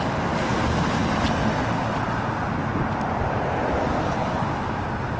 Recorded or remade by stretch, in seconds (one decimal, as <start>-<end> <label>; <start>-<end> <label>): 0.0-2.7 recorded; 2.7-4.7 remade; 4.7-5.2 recorded